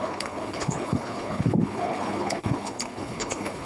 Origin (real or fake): fake